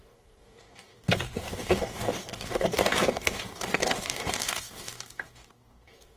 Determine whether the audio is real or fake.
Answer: fake